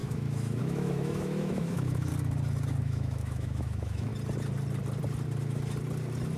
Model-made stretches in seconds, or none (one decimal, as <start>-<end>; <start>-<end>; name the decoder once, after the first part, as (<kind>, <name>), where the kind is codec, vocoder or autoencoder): 0.0-2.1 (autoencoder, DAC-VAE); 2.8-4.1